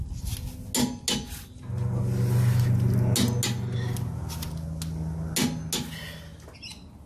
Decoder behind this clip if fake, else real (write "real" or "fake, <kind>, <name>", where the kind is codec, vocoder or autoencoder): real